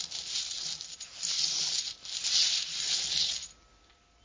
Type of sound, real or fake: real